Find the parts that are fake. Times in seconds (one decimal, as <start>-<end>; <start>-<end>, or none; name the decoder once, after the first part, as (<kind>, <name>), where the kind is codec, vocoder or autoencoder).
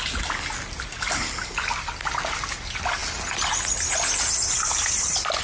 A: none